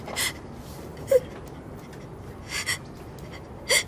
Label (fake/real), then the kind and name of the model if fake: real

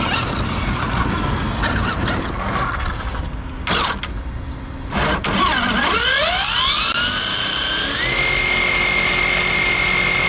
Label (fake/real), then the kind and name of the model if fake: real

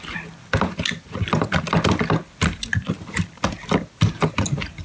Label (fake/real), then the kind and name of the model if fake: real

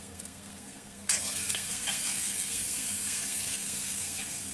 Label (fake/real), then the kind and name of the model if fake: fake, codec, SNAC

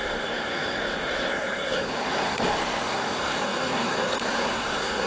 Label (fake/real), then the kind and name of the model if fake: fake, codec, SNAC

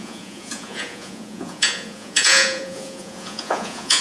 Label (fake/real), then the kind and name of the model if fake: fake, vocoder, Vocos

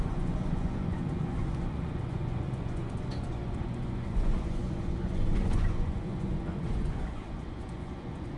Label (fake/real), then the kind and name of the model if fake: fake, vocoder, Vocos